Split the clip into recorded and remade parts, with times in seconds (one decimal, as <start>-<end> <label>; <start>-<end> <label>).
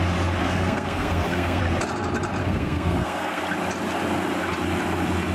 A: 0.0-0.4 recorded; 0.4-1.6 remade; 1.6-2.4 recorded; 2.4-3.4 remade; 3.4-5.3 recorded